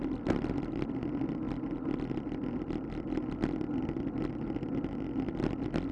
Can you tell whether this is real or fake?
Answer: real